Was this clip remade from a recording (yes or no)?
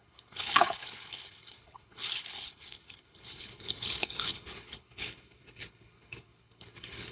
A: yes